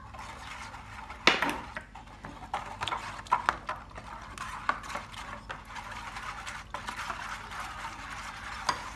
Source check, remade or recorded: recorded